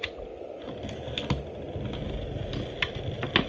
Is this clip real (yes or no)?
yes